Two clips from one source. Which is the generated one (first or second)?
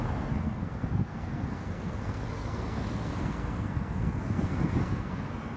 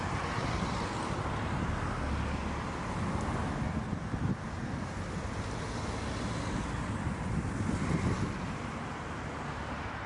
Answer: first